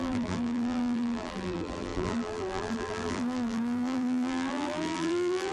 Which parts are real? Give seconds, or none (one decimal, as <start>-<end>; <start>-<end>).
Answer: none